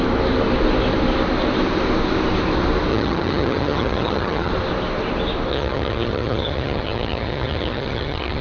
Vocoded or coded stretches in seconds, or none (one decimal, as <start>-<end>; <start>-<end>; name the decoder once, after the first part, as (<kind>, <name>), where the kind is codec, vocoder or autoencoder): 2.9-4.5 (vocoder, HiFi-GAN); 5.5-8.4